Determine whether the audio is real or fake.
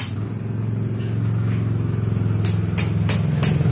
real